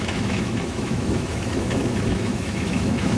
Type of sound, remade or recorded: remade